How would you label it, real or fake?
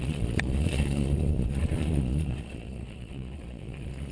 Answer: fake